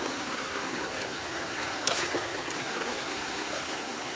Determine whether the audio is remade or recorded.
remade